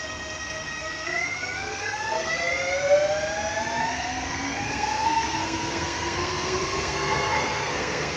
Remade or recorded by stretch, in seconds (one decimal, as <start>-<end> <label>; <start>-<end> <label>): 0.0-2.4 remade; 2.4-3.8 recorded; 3.8-8.2 remade